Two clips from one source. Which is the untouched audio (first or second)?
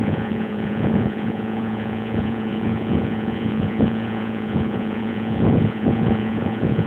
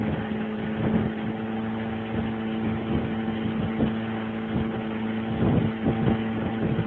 second